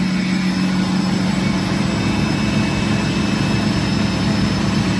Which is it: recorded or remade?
recorded